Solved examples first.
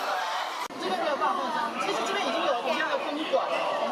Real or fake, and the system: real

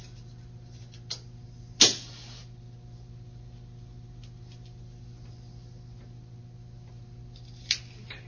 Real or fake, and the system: real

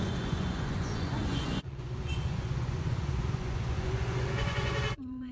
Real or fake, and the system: fake, vocoder, Vocos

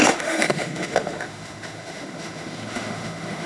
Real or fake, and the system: fake, autoencoder, DAC-VAE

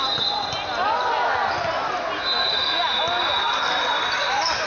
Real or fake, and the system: real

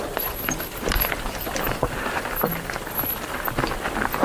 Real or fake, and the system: fake, vocoder, BigVGAN v2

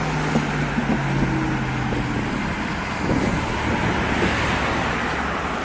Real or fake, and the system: real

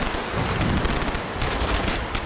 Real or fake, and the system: real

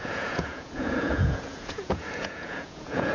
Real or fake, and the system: fake, vocoder, Vocos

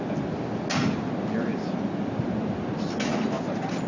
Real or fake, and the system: real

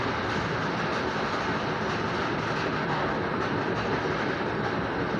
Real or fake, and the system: real